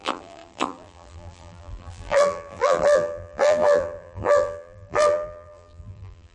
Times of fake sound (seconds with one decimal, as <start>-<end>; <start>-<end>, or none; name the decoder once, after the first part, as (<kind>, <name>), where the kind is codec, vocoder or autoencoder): 0.0-6.3 (vocoder, BigVGAN v2)